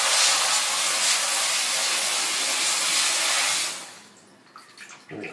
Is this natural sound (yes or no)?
yes